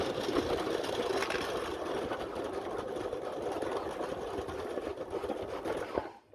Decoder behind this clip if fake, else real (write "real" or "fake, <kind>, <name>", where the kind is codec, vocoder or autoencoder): real